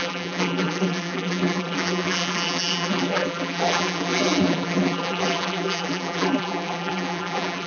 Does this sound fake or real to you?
fake